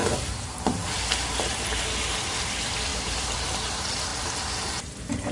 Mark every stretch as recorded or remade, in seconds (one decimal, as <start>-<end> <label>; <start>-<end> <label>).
0.0-2.9 recorded; 2.9-3.5 remade; 3.5-5.3 recorded